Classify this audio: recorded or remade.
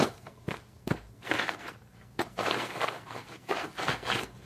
remade